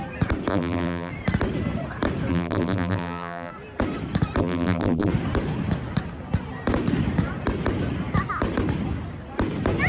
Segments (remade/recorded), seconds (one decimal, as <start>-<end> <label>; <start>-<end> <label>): 0.0-0.5 recorded; 0.5-1.1 remade; 1.1-2.3 recorded; 2.3-3.5 remade; 3.5-4.4 recorded; 4.4-5.1 remade; 5.1-9.9 recorded